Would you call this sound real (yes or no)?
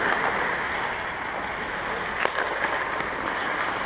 yes